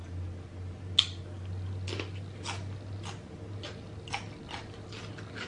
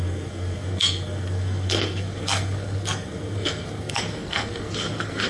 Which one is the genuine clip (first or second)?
first